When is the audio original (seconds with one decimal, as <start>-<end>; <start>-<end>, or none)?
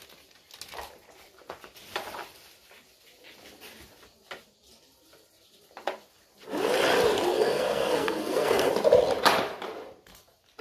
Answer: 0.0-7.3; 8.7-10.6